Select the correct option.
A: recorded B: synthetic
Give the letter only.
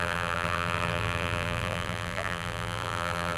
B